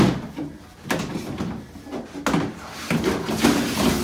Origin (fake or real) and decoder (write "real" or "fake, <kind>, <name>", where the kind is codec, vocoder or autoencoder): real